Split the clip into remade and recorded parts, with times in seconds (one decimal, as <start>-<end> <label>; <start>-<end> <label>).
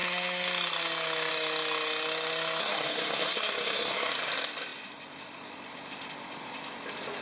0.0-2.6 recorded; 2.6-4.1 remade; 4.1-7.2 recorded